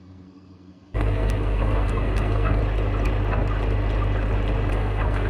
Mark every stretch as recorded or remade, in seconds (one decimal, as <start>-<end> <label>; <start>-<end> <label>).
0.0-2.6 remade; 2.6-4.7 recorded; 4.7-5.3 remade